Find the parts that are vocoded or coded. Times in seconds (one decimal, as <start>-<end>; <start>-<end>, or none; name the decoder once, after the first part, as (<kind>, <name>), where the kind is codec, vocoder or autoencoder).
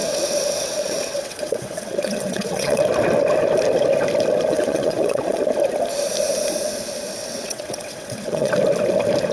0.0-2.8 (vocoder, WaveNeXt); 4.5-5.4; 7.2-8.5